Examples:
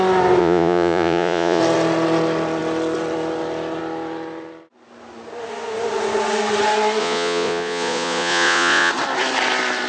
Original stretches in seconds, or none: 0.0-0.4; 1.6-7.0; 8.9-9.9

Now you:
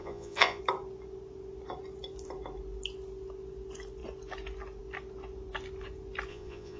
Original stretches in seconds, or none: 0.6-6.3

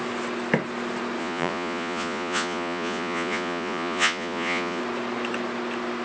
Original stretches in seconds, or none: 0.0-1.2; 4.8-6.0

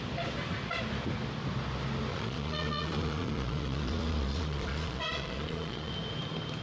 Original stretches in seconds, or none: 0.0-2.1; 5.9-6.6

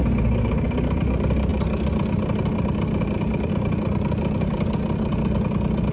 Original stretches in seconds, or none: 0.0-5.9

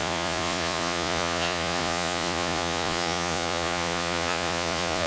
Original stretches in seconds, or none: none